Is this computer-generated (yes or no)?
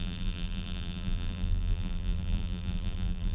yes